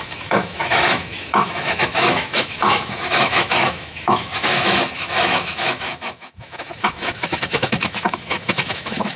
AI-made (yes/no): yes